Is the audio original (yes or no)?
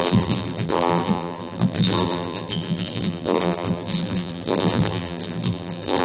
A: no